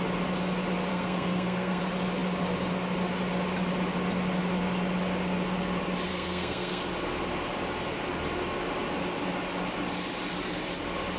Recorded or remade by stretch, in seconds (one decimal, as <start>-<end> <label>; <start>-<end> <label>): 0.0-0.9 recorded; 0.9-1.8 remade; 1.8-6.1 recorded; 6.1-6.8 remade; 6.8-11.2 recorded